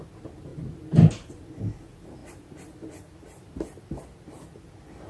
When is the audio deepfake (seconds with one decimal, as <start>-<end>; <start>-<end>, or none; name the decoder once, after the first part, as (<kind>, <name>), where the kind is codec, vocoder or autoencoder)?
none